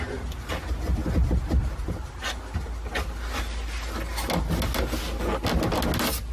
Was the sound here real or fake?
real